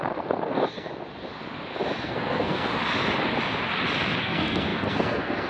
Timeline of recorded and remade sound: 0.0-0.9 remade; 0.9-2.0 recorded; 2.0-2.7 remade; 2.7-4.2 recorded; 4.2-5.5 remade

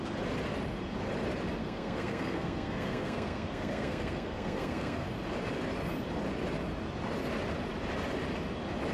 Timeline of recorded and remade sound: 0.0-1.6 recorded; 1.6-5.1 remade; 5.1-8.9 recorded